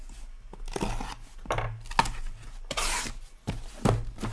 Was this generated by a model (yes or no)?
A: no